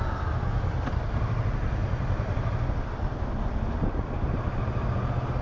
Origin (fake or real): real